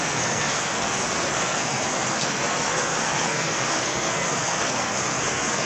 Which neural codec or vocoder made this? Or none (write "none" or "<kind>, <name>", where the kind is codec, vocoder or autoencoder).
codec, SNAC